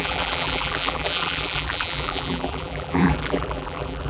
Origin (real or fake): fake